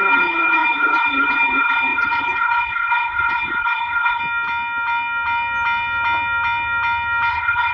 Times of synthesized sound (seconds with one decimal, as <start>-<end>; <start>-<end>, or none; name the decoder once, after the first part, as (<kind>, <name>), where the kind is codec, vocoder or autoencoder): 0.0-4.2 (codec, HILCodec); 7.3-7.7